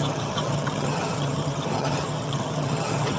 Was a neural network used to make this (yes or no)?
yes